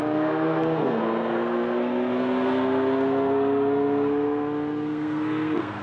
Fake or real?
fake